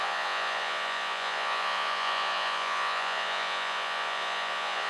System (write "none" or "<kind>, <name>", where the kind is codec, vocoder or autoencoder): vocoder, Vocos